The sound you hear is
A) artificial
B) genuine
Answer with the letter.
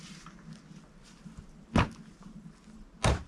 B